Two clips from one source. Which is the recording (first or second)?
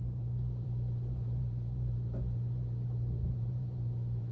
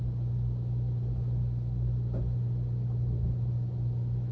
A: second